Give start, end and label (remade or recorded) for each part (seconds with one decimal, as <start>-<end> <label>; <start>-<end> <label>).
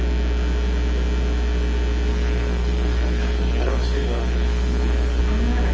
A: 0.0-2.1 recorded; 2.1-5.2 remade; 5.2-5.7 recorded